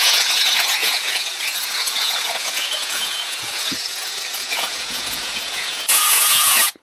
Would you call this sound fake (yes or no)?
yes